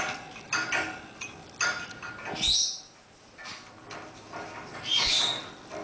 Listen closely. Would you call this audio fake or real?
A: real